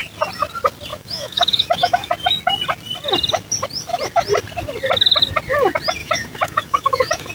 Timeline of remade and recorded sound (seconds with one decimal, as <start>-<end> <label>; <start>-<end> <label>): 0.0-0.9 recorded; 0.9-2.1 remade; 2.1-6.0 recorded; 6.0-7.3 remade